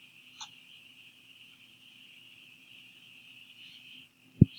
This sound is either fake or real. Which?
fake